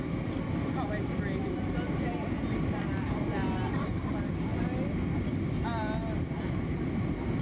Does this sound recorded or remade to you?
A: recorded